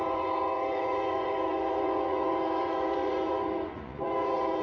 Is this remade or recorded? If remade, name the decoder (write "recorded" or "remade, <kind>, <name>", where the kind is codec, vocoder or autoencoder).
remade, vocoder, Vocos